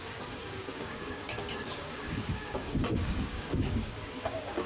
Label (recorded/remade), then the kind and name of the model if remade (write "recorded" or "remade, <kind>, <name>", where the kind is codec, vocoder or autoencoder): remade, codec, DAC